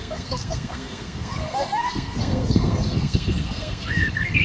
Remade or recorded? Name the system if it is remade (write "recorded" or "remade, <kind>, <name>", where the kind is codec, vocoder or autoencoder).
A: remade, codec, SNAC